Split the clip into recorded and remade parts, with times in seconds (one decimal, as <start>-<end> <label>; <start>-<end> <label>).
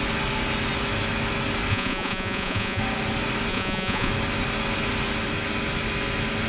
0.0-1.7 recorded; 1.7-2.8 remade; 2.8-3.5 recorded; 3.5-4.1 remade; 4.1-6.5 recorded